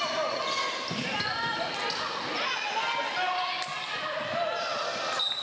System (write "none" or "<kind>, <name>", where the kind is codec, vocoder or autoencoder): none